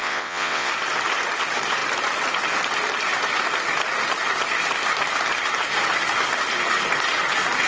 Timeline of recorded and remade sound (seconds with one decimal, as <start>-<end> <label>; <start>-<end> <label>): 0.0-0.7 remade; 0.7-7.7 recorded